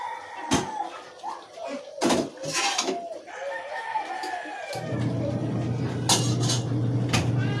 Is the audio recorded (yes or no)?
yes